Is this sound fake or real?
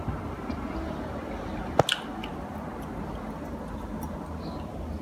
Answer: real